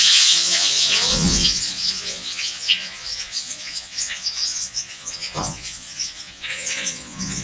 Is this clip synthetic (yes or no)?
yes